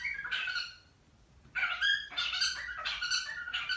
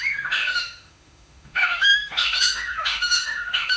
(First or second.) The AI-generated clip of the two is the second